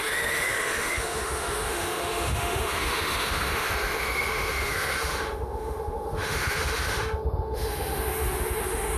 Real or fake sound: fake